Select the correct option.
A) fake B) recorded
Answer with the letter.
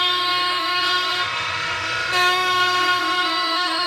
A